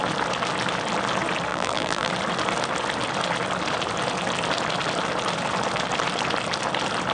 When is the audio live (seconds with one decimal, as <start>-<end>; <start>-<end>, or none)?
0.0-1.5; 2.1-7.1